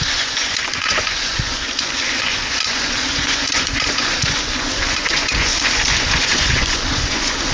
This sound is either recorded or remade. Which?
remade